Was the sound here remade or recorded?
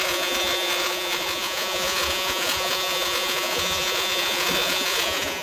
remade